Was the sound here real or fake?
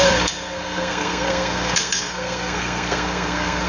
fake